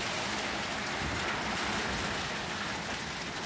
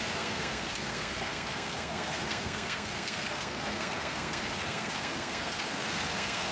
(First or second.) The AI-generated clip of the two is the second